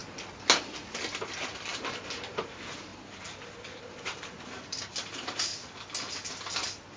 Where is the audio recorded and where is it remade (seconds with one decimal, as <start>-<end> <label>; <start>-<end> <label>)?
0.0-1.0 recorded; 1.0-2.9 remade; 2.9-3.8 recorded; 3.8-5.5 remade; 5.5-7.0 recorded